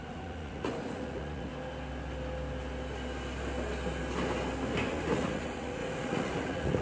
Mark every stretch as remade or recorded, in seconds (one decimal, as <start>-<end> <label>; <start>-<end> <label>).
0.0-1.5 remade; 1.5-4.9 recorded; 4.9-6.8 remade